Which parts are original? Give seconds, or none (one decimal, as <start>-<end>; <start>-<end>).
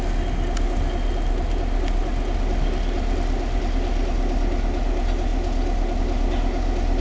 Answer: 0.0-7.0